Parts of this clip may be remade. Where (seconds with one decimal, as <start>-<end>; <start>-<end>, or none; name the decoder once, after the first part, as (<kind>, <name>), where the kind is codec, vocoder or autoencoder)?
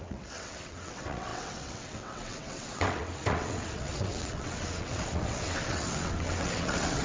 0.0-7.0 (vocoder, WaveNeXt)